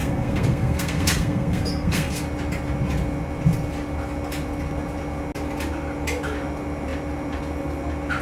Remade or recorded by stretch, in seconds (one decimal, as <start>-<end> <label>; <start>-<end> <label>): 0.0-2.2 remade; 2.2-8.2 recorded